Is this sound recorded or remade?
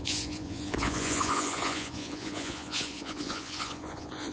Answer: remade